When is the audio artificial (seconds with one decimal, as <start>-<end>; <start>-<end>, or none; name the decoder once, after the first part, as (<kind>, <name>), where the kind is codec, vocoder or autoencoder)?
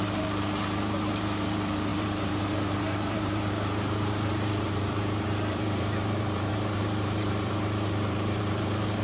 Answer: 0.0-9.0 (vocoder, BigVGAN v2)